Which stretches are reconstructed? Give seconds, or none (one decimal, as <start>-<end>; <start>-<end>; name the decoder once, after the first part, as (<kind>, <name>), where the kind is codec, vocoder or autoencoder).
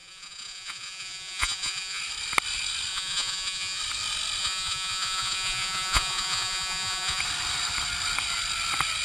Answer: 0.0-2.0 (vocoder, Vocos); 2.9-3.8; 4.4-7.2